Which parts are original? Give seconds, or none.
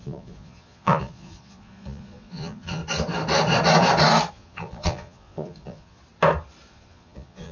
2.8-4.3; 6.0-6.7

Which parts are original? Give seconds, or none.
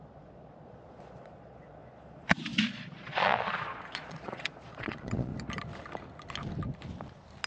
5.3-7.5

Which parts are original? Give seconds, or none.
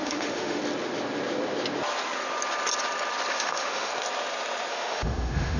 0.6-3.3; 3.9-4.7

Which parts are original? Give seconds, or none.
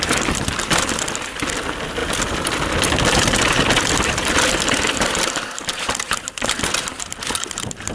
0.0-7.9